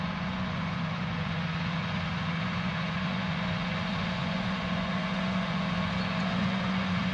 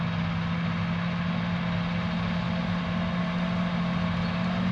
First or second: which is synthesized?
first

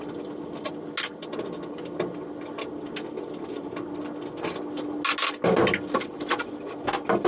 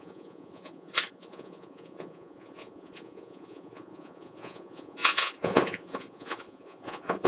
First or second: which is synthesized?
second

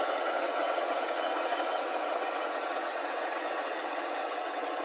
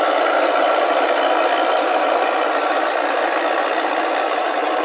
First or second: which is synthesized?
first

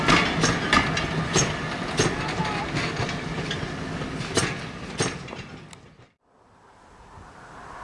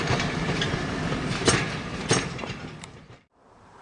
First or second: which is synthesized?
second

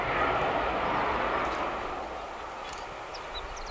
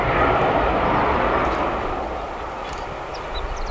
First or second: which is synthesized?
second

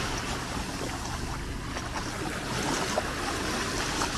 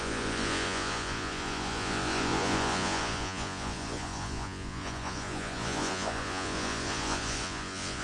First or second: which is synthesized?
second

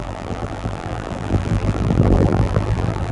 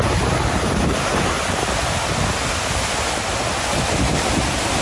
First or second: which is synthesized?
first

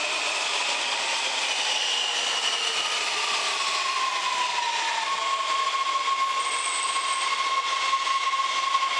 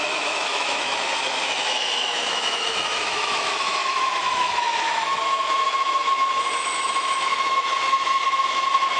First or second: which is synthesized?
second